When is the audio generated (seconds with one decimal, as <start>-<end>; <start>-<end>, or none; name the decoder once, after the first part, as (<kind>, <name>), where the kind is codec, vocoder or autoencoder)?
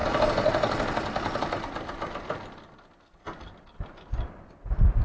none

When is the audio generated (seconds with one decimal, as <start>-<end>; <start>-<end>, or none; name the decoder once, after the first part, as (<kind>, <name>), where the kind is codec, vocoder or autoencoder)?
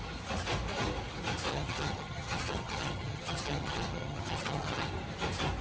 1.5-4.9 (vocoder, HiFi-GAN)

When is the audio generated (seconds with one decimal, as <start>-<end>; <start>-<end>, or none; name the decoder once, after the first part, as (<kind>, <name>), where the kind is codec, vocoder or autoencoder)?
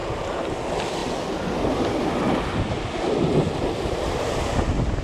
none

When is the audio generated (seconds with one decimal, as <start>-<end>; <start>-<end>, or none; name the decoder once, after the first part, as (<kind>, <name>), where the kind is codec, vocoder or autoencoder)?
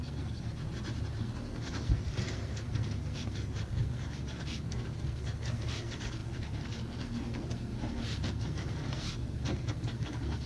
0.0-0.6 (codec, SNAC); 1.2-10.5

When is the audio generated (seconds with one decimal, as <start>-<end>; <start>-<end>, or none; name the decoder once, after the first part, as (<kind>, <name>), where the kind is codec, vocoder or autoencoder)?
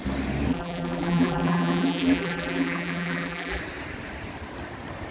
0.5-3.6 (vocoder, BigVGAN v2)